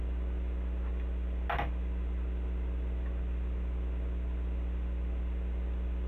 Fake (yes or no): no